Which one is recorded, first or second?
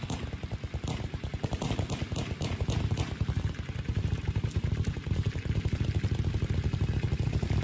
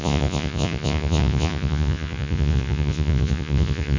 first